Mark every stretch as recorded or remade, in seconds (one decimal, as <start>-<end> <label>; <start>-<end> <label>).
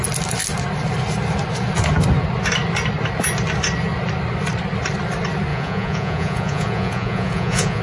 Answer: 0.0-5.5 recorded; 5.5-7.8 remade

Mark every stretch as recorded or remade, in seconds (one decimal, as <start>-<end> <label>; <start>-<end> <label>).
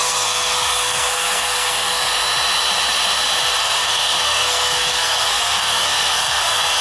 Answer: 0.0-2.1 remade; 2.1-3.6 recorded; 3.6-6.8 remade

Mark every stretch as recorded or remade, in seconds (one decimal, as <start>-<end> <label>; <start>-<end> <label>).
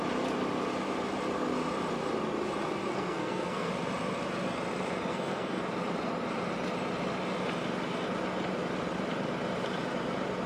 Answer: 0.0-2.9 recorded; 2.9-3.7 remade; 3.7-5.1 recorded; 5.1-5.6 remade; 5.6-10.5 recorded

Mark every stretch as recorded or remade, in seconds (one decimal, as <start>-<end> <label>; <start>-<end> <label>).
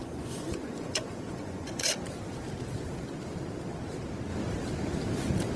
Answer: 0.0-1.9 remade; 1.9-5.6 recorded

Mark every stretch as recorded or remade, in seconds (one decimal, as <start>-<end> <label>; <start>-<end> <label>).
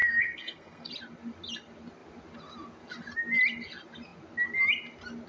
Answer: 0.0-0.9 remade; 0.9-5.3 recorded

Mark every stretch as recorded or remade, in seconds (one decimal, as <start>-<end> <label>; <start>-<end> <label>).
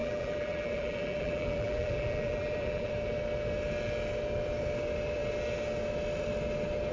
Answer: 0.0-2.9 remade; 2.9-6.9 recorded